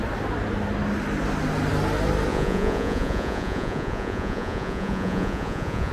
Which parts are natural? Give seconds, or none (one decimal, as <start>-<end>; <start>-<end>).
0.0-2.3